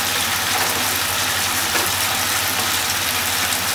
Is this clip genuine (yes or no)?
no